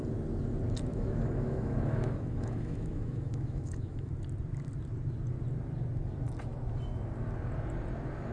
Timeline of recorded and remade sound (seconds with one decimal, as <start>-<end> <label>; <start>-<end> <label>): 0.0-0.9 recorded; 0.9-4.1 remade; 4.1-8.3 recorded